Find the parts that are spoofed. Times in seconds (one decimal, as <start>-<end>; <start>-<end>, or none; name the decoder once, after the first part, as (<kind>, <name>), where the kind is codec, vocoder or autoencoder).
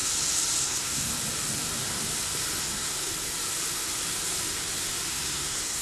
0.6-1.1 (codec, SNAC); 2.6-3.1; 5.1-5.8